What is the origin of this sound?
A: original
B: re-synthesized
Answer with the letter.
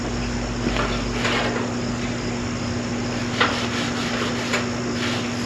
A